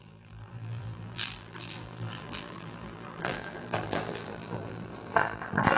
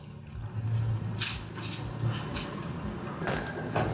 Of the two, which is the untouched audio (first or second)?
second